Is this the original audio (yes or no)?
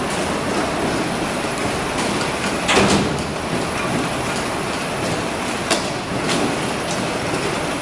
yes